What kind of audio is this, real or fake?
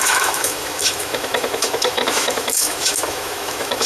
fake